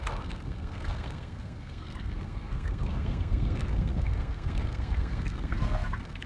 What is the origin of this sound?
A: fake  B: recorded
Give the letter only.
A